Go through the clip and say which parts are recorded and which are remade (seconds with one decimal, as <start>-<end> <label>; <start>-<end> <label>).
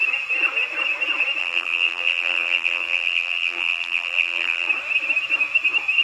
0.0-1.4 recorded; 1.4-4.7 remade; 4.7-6.0 recorded